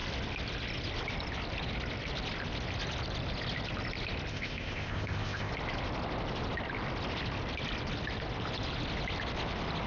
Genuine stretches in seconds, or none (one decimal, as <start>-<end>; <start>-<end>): 0.0-4.3; 5.5-9.9